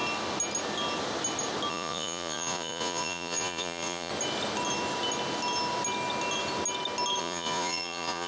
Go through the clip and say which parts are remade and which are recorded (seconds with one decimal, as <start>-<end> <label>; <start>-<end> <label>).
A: 0.0-1.7 recorded; 1.7-4.1 remade; 4.1-7.2 recorded; 7.2-8.3 remade